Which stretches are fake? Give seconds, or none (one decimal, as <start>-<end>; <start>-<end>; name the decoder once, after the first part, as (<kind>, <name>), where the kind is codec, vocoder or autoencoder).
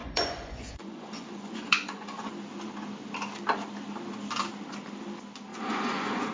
0.0-2.3 (vocoder, Vocos); 5.5-6.3